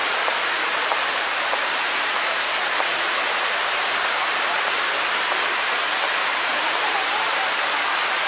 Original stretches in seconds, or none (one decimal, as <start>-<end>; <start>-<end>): 4.8-6.2; 7.8-8.3